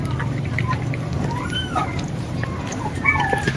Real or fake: fake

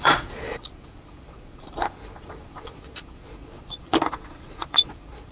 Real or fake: fake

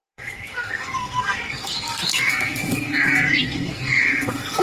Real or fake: fake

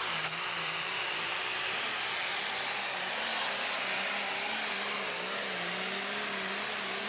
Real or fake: real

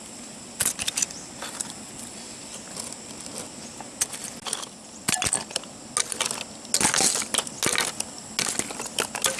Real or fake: real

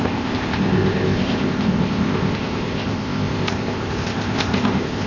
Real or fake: fake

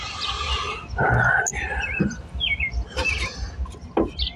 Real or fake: real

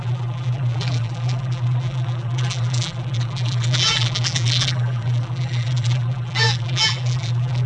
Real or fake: fake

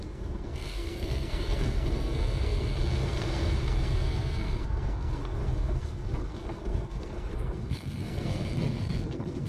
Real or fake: fake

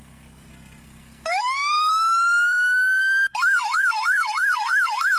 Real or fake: fake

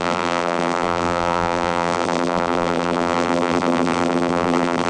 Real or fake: fake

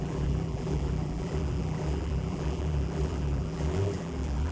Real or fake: fake